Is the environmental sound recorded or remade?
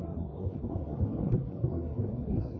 remade